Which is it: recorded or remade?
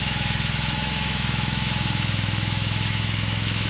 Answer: remade